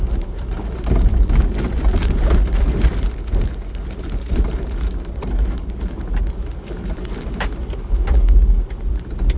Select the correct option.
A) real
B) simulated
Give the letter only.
A